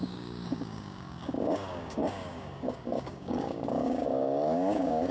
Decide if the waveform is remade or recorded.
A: remade